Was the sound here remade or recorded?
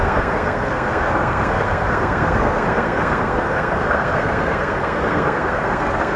remade